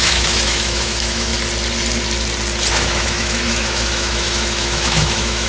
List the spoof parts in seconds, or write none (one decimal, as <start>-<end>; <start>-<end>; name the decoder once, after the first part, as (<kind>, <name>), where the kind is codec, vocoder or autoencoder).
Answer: 0.0-1.3 (autoencoder, DAC-VAE); 2.7-5.5